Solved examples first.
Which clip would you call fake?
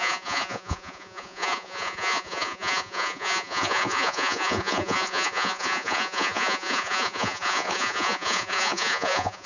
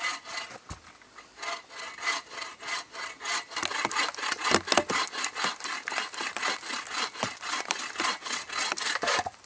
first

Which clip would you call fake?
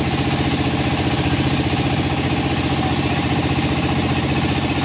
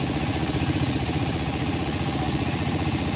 second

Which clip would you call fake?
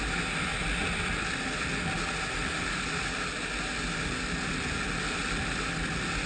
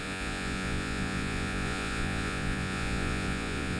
second